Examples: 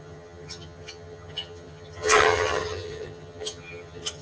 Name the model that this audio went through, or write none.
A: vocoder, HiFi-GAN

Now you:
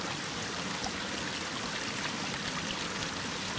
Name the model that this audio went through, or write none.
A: none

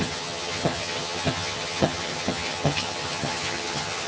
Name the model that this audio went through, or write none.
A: vocoder, HiFi-GAN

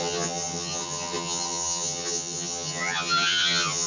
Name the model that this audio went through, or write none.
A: vocoder, HiFi-GAN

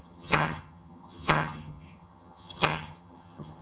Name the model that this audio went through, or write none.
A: vocoder, HiFi-GAN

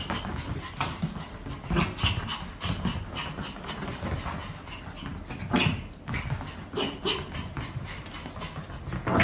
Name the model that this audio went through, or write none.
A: none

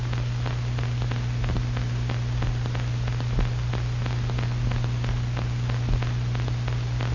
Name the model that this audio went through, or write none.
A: none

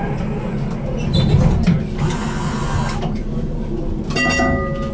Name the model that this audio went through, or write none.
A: none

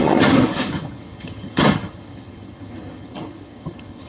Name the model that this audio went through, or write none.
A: vocoder, HiFi-GAN